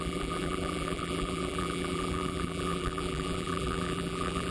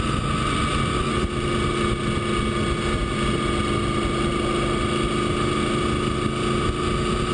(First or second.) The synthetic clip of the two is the first